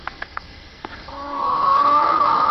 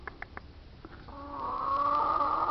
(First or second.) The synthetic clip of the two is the first